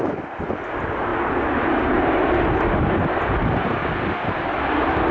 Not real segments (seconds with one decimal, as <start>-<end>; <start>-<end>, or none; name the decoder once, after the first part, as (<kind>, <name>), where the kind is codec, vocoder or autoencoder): none